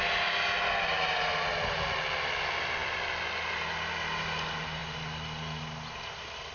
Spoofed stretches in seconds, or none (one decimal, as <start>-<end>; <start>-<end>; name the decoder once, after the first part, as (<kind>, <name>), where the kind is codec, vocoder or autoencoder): none